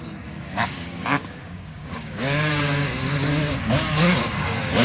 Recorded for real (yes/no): no